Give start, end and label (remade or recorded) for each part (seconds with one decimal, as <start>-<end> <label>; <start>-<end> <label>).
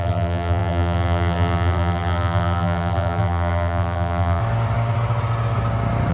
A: 0.0-4.4 remade; 4.4-6.1 recorded